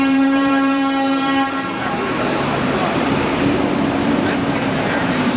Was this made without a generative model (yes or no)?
no